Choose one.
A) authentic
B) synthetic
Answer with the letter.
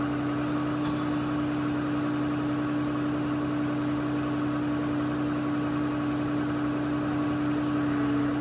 A